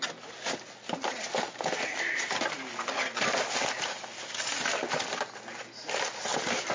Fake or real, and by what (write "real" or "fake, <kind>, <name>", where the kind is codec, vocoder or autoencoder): real